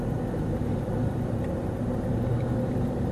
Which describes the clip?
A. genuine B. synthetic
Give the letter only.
B